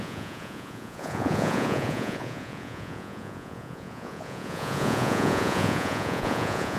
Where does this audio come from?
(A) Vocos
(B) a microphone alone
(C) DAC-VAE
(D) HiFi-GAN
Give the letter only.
A